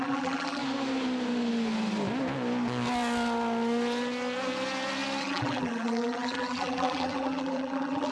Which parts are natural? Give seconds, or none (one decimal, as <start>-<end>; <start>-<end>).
0.6-5.2